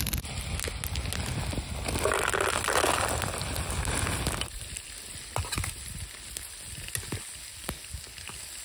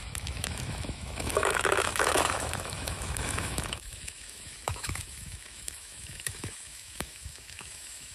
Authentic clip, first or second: first